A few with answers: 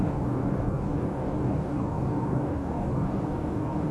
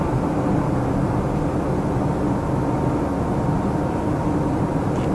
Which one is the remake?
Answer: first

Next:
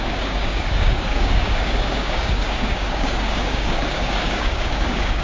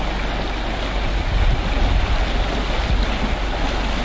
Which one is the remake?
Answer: first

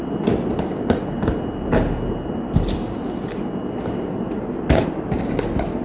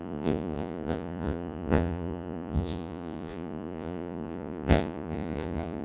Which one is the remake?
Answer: second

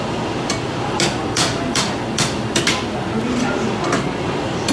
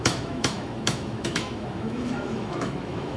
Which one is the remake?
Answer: second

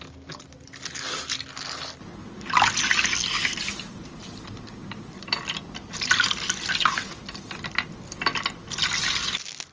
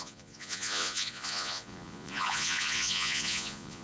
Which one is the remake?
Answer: second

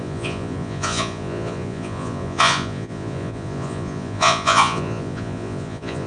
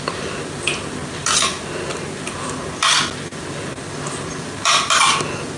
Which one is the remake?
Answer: first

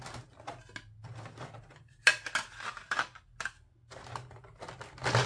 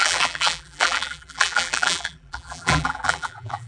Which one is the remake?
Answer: second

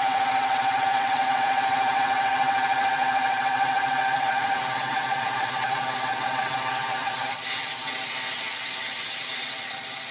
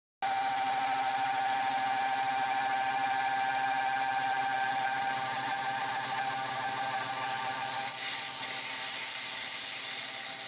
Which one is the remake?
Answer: first